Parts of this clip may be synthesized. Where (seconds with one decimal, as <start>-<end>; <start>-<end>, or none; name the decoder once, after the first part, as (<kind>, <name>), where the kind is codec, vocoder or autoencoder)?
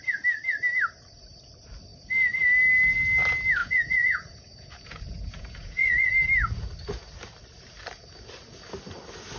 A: 3.6-6.1 (vocoder, Vocos)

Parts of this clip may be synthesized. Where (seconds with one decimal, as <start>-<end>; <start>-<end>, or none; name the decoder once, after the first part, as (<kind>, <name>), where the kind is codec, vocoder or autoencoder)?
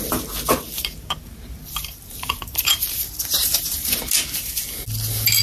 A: 0.8-4.0 (vocoder, BigVGAN v2)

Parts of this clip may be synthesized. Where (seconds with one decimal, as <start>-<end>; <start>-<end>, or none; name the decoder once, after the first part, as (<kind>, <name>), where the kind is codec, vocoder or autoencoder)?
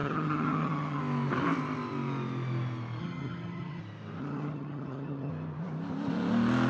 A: 0.0-1.0 (vocoder, HiFi-GAN); 3.0-3.8; 4.2-5.3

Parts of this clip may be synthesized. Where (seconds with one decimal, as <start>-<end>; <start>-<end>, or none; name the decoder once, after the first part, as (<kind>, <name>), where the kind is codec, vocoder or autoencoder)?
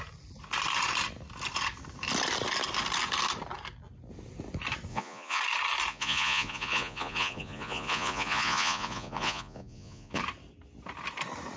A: 4.9-5.4 (vocoder, Vocos); 5.9-10.2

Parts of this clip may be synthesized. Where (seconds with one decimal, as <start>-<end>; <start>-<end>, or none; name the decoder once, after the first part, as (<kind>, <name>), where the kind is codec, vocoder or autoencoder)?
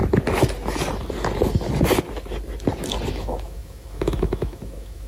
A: 3.1-5.1 (autoencoder, DAC-VAE)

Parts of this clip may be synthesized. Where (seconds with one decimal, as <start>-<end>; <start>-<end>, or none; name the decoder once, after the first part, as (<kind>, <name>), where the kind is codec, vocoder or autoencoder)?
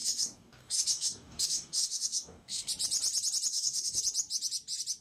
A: 0.0-2.7 (codec, DAC); 3.5-4.0